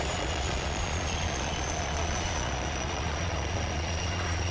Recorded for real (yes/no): no